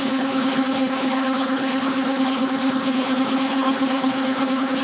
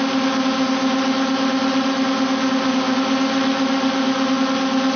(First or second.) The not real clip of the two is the first